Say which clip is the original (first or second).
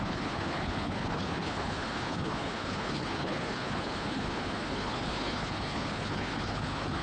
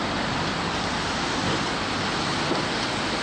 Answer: second